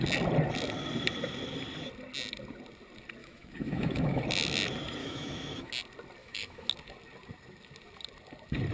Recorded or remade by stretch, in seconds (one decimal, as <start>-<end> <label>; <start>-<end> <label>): 0.0-3.2 recorded; 3.2-4.2 remade; 4.2-5.0 recorded; 5.0-5.7 remade; 5.7-6.2 recorded; 6.2-6.7 remade; 6.7-8.7 recorded

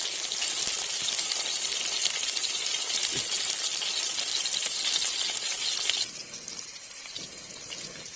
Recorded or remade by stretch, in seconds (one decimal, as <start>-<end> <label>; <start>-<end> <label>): 0.0-8.2 recorded